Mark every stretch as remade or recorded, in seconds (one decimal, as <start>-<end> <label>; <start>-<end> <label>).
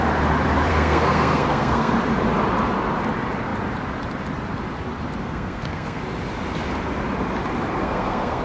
0.0-0.7 recorded; 0.7-1.9 remade; 1.9-5.2 recorded; 5.2-6.0 remade; 6.0-7.8 recorded; 7.8-8.4 remade